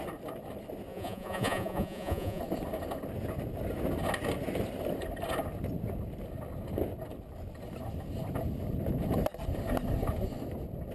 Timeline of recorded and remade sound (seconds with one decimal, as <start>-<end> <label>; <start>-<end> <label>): 0.0-0.9 recorded; 0.9-2.4 remade; 2.4-10.9 recorded